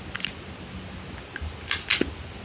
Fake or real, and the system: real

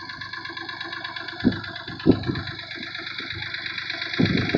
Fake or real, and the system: real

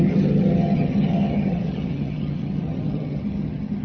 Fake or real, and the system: fake, vocoder, HiFi-GAN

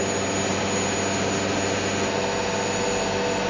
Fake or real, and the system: real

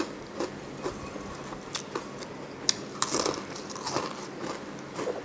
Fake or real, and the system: real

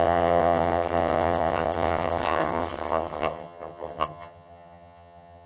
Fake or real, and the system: fake, vocoder, HiFi-GAN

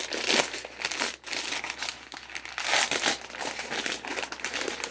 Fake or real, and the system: real